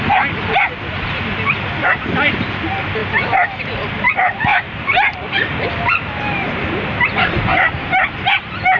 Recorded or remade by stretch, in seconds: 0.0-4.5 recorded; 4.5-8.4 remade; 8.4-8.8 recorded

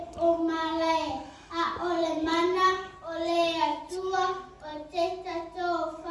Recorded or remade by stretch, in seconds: 0.0-6.1 recorded

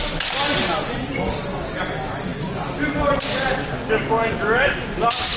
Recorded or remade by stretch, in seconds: 0.0-5.4 recorded

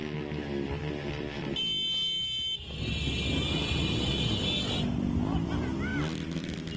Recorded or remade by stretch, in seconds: 0.0-6.8 recorded

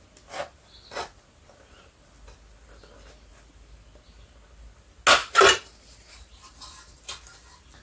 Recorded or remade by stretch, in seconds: 0.0-5.2 recorded; 5.2-6.6 remade; 6.6-7.8 recorded